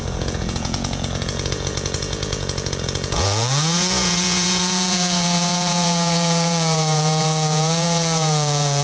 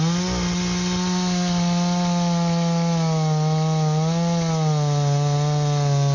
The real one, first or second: second